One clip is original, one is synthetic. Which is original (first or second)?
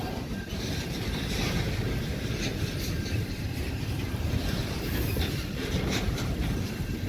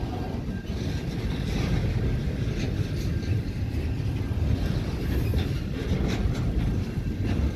second